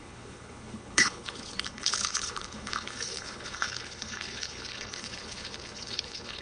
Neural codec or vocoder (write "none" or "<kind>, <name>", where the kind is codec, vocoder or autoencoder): codec, HILCodec